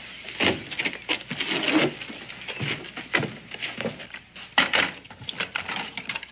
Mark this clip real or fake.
real